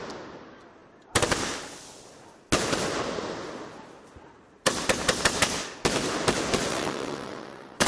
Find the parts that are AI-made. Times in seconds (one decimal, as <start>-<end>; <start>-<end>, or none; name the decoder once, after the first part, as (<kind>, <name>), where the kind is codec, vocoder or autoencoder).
6.7-7.9 (vocoder, WaveNeXt)